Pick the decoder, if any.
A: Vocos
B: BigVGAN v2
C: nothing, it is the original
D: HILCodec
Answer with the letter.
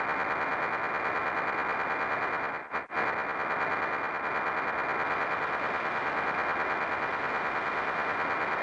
C